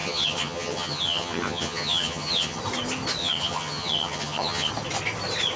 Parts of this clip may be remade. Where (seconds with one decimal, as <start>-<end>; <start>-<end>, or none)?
0.0-2.6; 3.2-4.7